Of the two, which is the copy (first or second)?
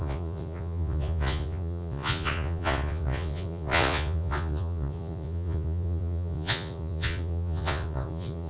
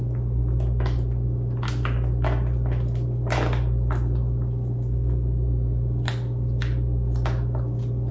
first